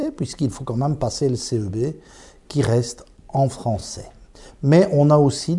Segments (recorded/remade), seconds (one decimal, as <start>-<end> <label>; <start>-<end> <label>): 0.0-1.7 remade; 1.7-3.8 recorded; 3.8-4.5 remade; 4.5-5.6 recorded